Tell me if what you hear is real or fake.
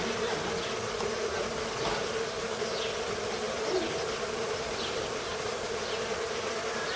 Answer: real